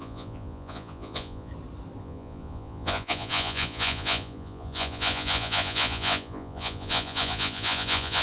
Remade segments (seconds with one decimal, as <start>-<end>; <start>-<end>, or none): 0.0-1.5; 2.0-8.2

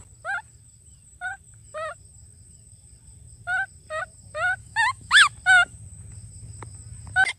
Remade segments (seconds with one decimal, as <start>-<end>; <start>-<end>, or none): 4.6-5.3

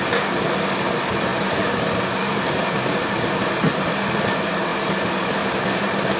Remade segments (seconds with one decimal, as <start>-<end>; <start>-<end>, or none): 0.0-6.2

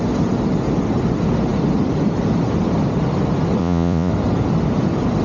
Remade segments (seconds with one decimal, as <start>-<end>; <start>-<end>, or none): 3.6-4.1

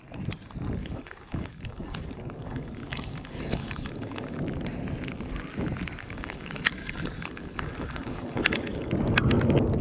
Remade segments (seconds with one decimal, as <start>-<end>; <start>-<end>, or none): 0.8-4.4; 6.0-8.9

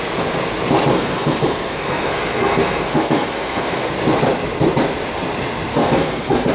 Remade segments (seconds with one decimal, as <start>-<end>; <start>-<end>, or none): 0.9-3.9; 5.7-6.5

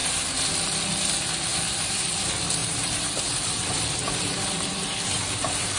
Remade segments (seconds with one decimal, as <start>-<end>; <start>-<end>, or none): 1.5-2.0; 2.6-5.8